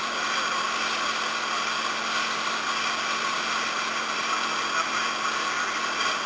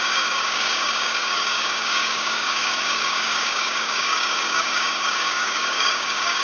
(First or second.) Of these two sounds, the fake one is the second